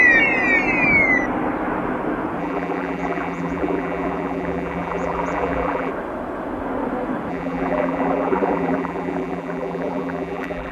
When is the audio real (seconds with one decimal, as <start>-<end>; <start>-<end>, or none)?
0.0-2.4; 5.9-7.3